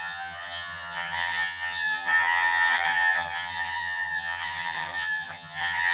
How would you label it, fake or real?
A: fake